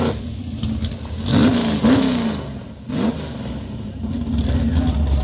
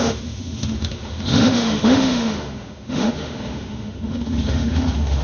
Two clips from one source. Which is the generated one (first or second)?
second